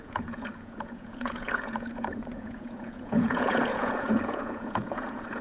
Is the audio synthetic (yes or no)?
yes